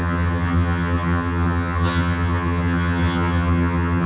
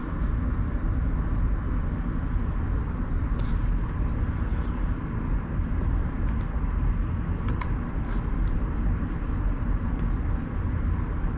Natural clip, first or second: second